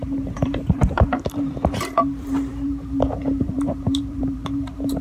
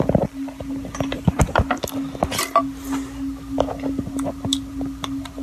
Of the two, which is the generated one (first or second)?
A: first